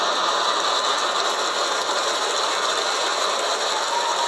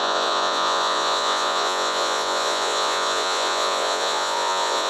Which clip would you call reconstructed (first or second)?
second